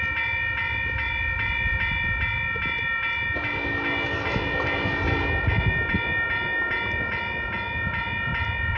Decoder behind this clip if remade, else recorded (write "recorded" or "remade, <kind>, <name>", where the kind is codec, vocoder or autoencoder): recorded